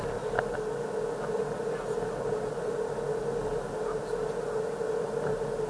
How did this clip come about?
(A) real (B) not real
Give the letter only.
A